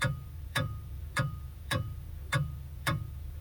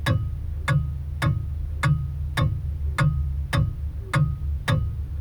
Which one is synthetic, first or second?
first